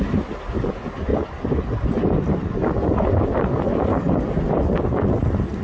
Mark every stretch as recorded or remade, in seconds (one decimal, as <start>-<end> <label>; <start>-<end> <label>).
0.0-5.6 recorded